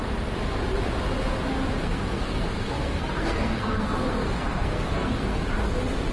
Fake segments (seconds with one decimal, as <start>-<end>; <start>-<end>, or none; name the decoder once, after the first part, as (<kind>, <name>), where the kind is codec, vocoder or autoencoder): 1.8-5.5 (codec, SNAC)